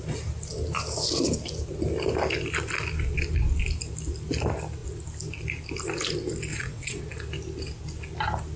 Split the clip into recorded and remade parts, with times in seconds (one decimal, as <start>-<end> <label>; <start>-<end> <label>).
0.0-6.5 recorded; 6.5-7.0 remade; 7.0-8.6 recorded